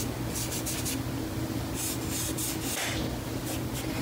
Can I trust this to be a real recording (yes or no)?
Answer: yes